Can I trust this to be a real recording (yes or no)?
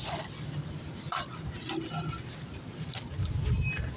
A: no